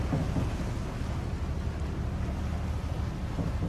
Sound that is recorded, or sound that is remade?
recorded